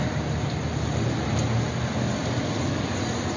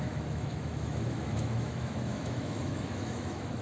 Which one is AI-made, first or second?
second